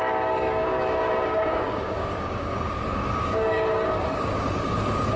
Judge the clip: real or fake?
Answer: fake